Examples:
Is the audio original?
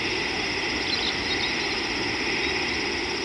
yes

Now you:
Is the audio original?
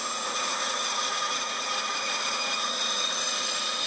no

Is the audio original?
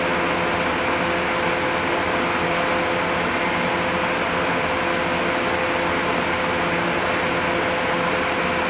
yes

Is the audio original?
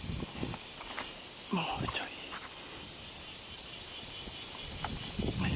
yes